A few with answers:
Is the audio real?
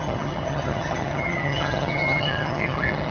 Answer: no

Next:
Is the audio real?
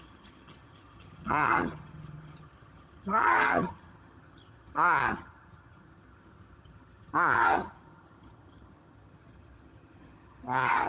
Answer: no